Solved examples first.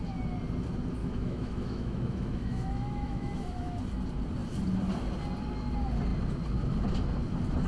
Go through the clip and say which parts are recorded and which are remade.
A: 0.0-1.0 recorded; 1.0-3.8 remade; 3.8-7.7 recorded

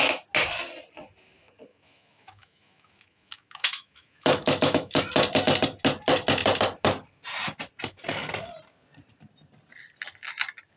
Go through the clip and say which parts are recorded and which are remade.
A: 0.0-1.7 recorded; 1.7-5.0 remade; 5.0-10.8 recorded

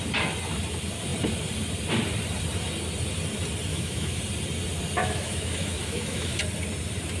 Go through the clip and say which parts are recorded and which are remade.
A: 0.0-3.7 recorded; 3.7-4.2 remade; 4.2-5.0 recorded; 5.0-6.4 remade; 6.4-7.2 recorded

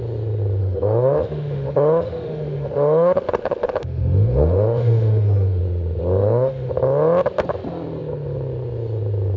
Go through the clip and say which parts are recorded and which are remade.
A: 0.0-0.6 recorded; 0.6-5.6 remade; 5.6-6.2 recorded; 6.2-6.7 remade; 6.7-9.4 recorded